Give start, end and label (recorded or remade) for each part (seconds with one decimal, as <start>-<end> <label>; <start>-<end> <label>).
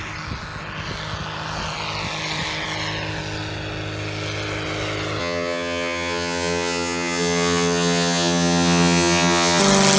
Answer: 0.0-5.2 recorded; 5.2-9.6 remade; 9.6-10.0 recorded